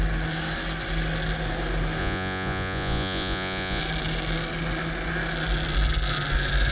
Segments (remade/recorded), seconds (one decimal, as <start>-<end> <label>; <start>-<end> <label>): 0.0-2.0 recorded; 2.0-3.8 remade; 3.8-6.7 recorded